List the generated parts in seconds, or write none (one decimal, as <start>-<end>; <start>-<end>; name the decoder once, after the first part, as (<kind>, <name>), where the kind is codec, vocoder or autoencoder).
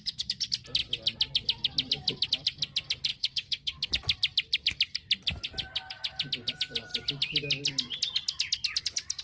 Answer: 3.1-3.9 (codec, DAC)